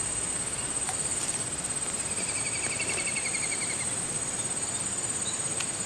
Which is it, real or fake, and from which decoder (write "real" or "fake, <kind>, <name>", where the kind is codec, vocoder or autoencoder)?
real